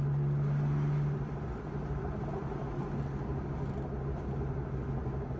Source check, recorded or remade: recorded